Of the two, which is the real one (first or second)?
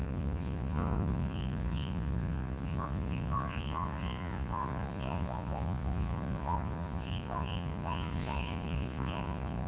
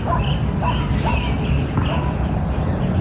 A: second